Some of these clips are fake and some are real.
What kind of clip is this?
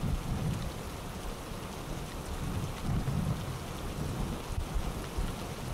real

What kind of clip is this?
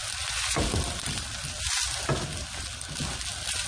real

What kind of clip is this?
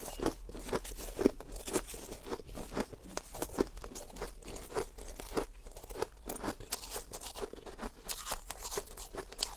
real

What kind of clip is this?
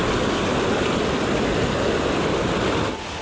real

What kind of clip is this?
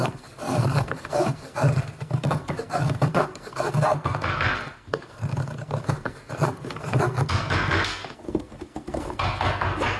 fake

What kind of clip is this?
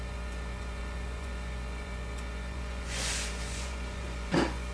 fake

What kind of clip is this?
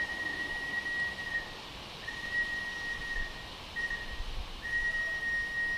real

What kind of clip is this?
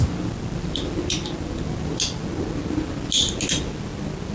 real